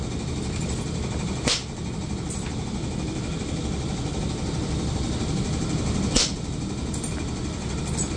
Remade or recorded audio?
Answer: recorded